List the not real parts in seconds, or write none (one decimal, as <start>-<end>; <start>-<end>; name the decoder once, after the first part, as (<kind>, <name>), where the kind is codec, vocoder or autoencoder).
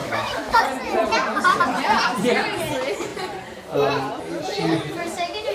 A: 0.0-0.6 (autoencoder, DAC-VAE)